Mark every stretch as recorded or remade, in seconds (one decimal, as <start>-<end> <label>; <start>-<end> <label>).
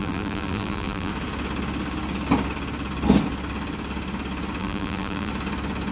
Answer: 0.0-1.1 remade; 1.1-4.6 recorded; 4.6-5.3 remade; 5.3-5.9 recorded